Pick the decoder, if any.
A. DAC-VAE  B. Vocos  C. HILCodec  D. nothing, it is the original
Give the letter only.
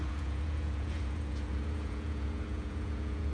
B